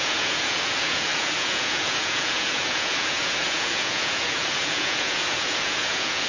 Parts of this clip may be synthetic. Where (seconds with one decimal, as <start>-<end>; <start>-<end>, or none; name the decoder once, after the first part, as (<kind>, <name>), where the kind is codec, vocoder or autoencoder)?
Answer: 0.0-6.3 (vocoder, Vocos)